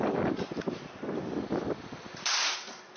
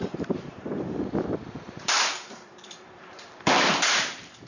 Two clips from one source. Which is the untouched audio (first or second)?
first